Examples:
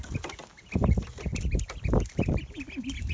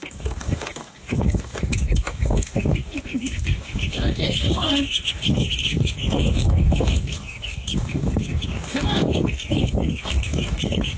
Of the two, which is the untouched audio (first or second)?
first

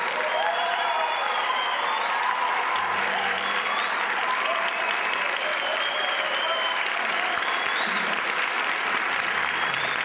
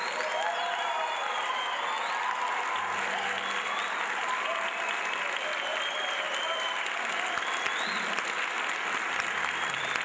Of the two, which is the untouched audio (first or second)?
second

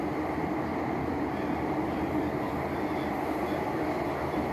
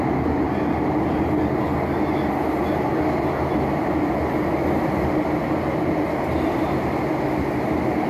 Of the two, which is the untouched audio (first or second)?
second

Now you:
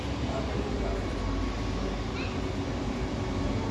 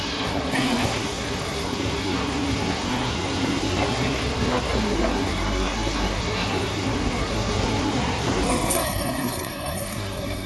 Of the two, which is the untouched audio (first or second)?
first